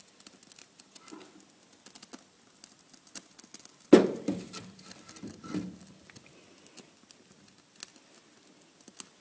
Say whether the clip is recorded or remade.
recorded